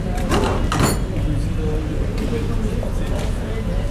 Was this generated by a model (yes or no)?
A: no